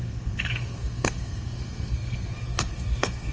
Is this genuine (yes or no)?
no